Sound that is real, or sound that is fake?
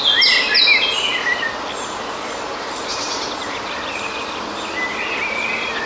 real